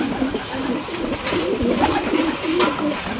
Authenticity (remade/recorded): recorded